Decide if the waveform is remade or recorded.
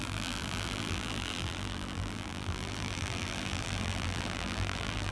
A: remade